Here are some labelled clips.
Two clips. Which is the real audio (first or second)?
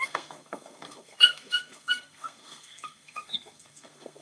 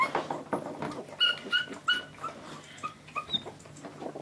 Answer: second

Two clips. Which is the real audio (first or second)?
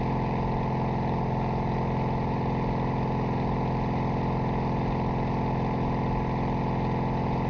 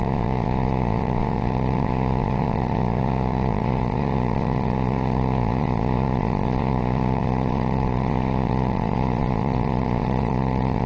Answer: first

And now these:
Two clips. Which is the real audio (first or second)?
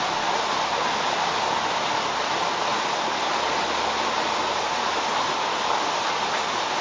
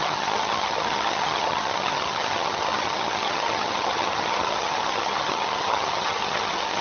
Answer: first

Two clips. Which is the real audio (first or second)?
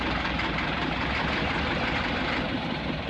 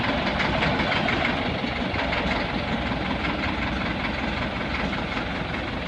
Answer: second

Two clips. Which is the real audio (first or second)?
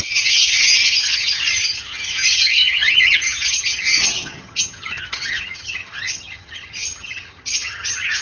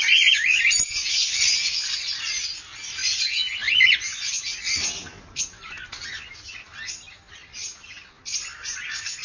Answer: second